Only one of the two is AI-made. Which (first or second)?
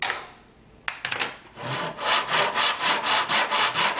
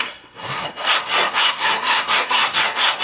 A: second